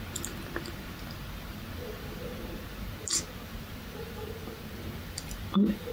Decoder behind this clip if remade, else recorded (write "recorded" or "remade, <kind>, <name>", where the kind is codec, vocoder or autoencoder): recorded